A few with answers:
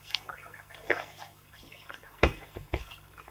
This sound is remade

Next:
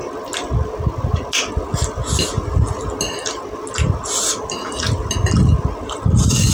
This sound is recorded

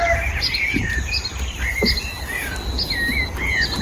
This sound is recorded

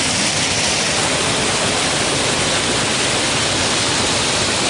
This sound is recorded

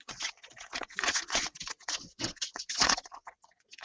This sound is remade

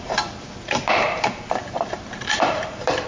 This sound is remade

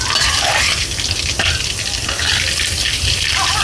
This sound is recorded